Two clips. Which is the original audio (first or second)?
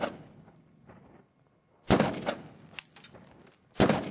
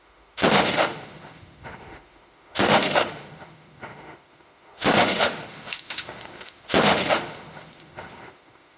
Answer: first